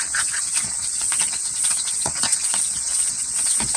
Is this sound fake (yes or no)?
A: yes